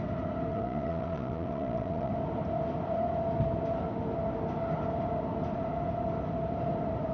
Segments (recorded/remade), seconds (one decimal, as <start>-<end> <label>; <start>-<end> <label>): 0.0-0.5 recorded; 0.5-2.1 remade; 2.1-7.1 recorded